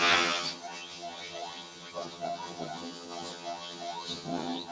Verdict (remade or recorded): remade